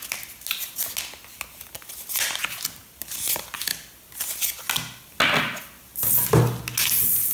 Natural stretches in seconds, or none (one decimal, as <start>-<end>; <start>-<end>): 0.0-7.3